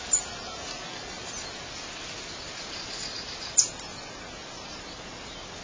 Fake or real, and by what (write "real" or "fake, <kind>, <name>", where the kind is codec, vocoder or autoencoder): real